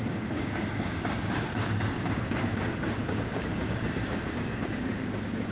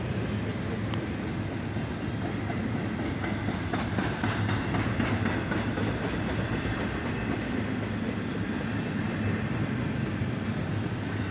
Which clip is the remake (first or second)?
first